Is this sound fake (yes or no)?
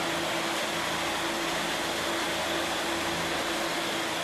no